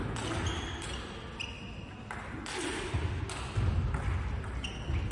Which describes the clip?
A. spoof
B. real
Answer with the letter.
B